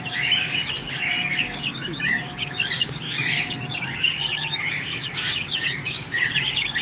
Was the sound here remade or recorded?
remade